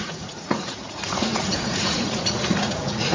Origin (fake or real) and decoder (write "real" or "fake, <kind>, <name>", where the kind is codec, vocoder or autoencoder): fake, vocoder, Vocos